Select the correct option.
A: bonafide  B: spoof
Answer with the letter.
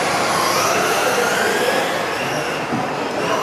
A